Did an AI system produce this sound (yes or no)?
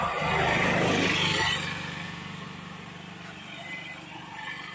no